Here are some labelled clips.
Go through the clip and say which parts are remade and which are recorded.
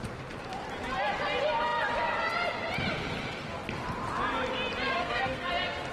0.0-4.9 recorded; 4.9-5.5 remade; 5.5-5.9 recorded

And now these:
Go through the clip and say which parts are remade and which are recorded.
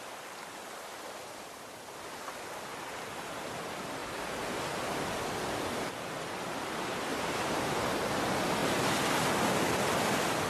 0.0-2.7 recorded; 2.7-3.4 remade; 3.4-7.1 recorded; 7.1-7.8 remade; 7.8-8.6 recorded; 8.6-9.1 remade; 9.1-10.5 recorded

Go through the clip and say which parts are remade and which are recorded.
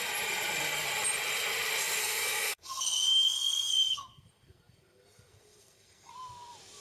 0.0-2.0 recorded; 2.0-6.1 remade; 6.1-6.8 recorded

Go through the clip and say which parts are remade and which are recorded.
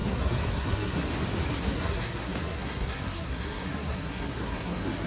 0.0-1.1 remade; 1.1-1.6 recorded; 1.6-5.1 remade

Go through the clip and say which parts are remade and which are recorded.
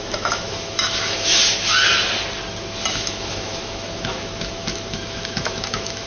0.0-1.4 remade; 1.4-2.9 recorded; 2.9-6.1 remade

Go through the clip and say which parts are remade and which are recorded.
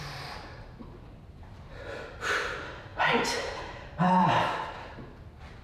0.0-2.9 recorded; 2.9-4.4 remade; 4.4-5.6 recorded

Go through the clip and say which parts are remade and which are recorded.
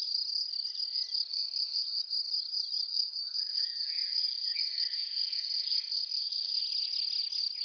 0.0-1.3 recorded; 1.3-2.0 remade; 2.0-2.9 recorded; 2.9-6.6 remade; 6.6-7.6 recorded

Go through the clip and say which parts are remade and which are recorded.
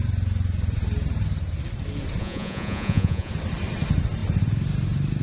0.0-2.2 recorded; 2.2-3.3 remade; 3.3-5.2 recorded